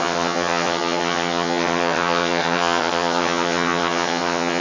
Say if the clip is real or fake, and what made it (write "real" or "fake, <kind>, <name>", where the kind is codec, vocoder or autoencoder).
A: fake, vocoder, HiFi-GAN